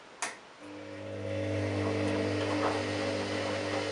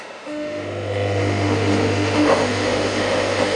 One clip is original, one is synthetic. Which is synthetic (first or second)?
second